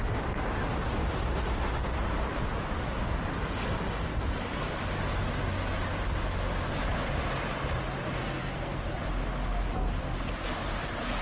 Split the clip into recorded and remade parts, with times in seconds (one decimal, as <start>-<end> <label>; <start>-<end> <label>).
0.0-8.2 recorded; 8.2-8.9 remade; 8.9-11.2 recorded